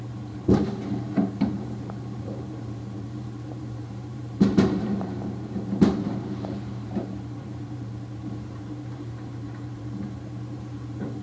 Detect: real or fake fake